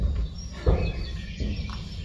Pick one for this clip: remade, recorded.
recorded